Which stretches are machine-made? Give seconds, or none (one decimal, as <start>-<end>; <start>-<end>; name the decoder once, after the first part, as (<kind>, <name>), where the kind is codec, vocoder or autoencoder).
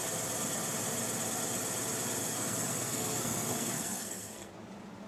2.2-4.5 (codec, SNAC)